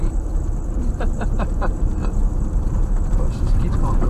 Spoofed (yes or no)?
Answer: yes